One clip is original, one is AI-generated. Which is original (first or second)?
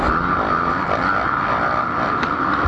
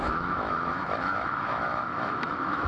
first